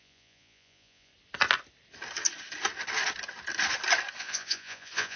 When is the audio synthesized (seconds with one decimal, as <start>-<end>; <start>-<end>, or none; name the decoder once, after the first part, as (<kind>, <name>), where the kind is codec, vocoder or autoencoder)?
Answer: 0.0-1.1 (vocoder, Vocos); 4.2-5.2